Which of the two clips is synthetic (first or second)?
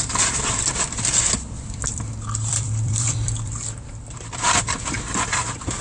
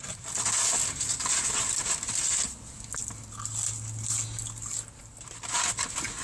first